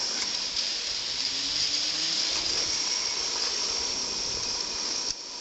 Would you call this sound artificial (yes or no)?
no